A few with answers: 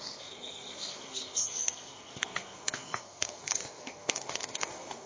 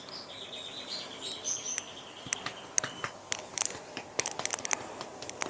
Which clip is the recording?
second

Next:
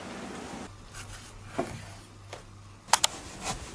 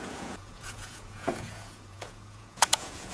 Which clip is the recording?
first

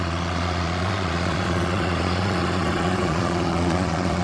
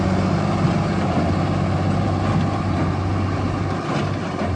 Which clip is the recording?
second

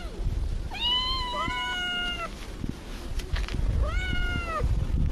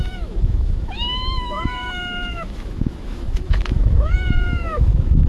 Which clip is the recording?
first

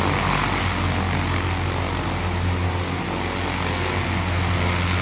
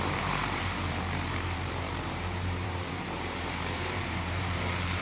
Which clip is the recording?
first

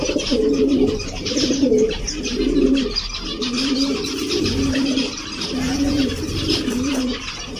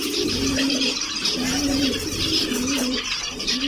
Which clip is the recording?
second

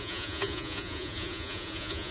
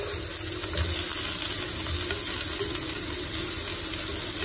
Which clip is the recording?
second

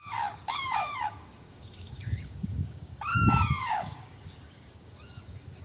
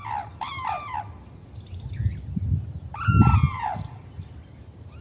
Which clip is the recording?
second